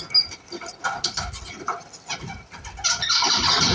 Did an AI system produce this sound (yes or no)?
no